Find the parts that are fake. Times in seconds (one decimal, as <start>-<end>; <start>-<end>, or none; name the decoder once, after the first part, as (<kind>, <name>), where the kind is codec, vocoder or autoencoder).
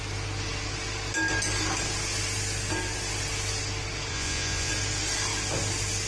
4.1-4.7 (vocoder, Vocos)